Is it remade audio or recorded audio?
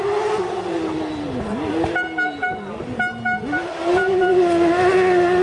recorded